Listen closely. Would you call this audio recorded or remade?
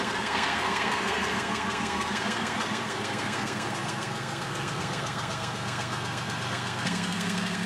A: remade